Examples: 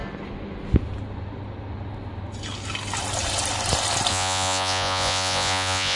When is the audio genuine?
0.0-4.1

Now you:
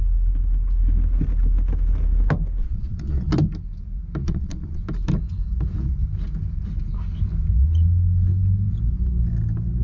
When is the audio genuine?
0.0-2.6; 3.3-4.2; 4.8-9.8

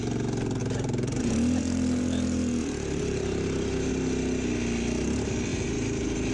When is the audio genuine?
0.0-0.6; 3.9-5.5

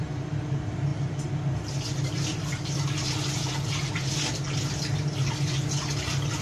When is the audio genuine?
0.0-6.4

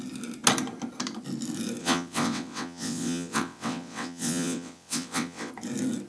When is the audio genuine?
0.0-1.8; 5.5-6.1

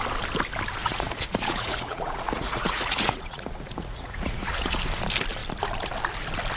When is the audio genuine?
0.0-0.8; 4.8-6.6

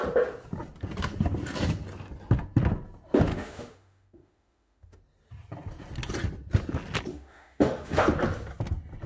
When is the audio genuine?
0.0-3.3; 5.0-7.1; 8.0-9.1